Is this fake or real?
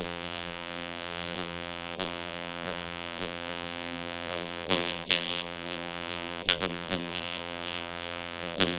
fake